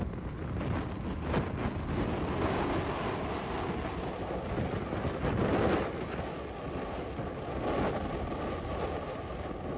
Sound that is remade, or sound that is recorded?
recorded